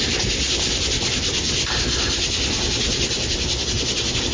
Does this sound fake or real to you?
real